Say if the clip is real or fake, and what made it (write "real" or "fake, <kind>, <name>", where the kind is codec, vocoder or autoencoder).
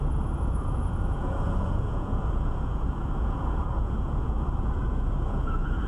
fake, vocoder, Vocos